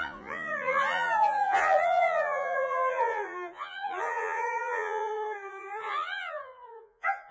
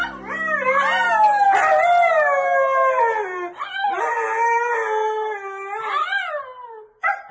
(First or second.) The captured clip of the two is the second